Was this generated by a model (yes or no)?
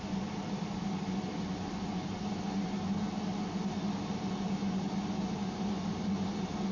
no